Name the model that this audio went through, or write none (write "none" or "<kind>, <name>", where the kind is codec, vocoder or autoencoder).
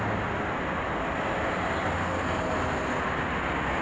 none